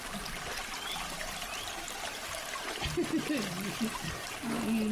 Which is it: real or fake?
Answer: real